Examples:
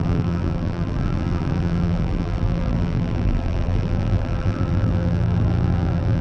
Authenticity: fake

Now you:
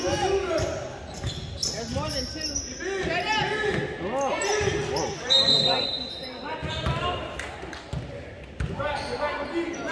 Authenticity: real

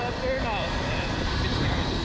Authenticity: real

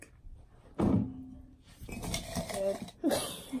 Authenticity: real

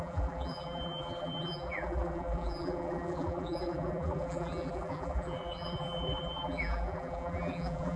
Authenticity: fake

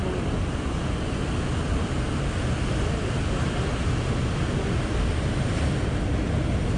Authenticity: real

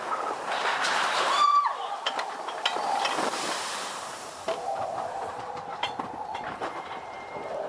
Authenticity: fake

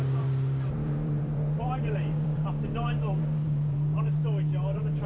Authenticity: fake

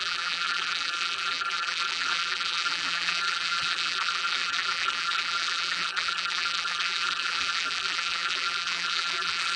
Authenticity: fake